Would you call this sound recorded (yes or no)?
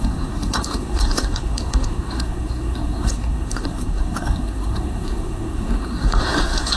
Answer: no